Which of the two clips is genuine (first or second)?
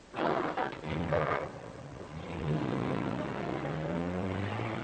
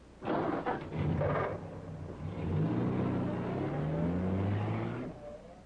second